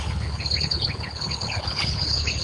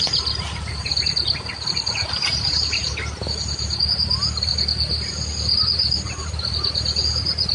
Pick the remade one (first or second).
first